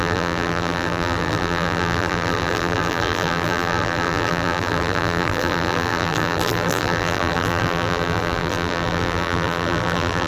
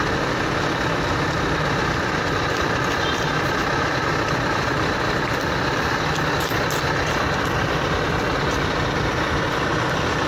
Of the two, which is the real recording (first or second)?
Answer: second